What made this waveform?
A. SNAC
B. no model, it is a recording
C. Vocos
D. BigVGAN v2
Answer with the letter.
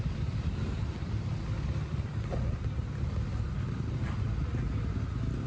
B